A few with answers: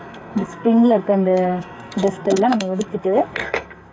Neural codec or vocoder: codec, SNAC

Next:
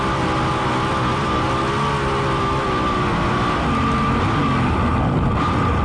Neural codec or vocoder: none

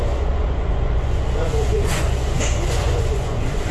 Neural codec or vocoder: vocoder, Vocos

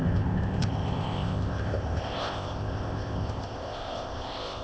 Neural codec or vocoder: codec, ZipCodec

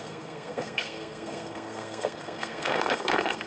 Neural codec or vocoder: codec, SNAC